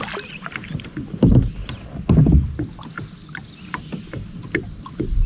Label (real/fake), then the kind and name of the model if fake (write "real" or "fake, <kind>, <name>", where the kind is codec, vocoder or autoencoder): real